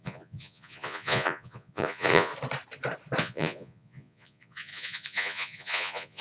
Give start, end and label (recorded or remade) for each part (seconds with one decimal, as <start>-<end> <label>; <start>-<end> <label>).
0.0-2.3 remade; 2.3-3.2 recorded; 3.2-6.2 remade